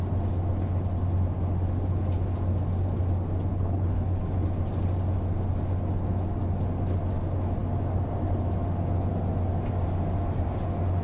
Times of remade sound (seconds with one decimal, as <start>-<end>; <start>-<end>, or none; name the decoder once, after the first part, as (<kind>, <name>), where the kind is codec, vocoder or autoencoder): 3.5-4.2 (codec, HILCodec)